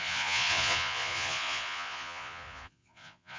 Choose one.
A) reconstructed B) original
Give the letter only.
A